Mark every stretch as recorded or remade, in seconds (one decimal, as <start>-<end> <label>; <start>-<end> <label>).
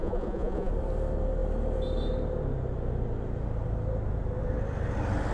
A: 0.0-0.7 remade; 0.7-5.3 recorded